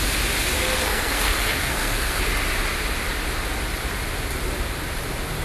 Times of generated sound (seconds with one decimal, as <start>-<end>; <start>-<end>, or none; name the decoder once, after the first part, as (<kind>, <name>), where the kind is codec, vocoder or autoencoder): 0.6-2.2 (codec, SNAC)